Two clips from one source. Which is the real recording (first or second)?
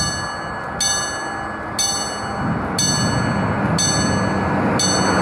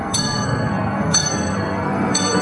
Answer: first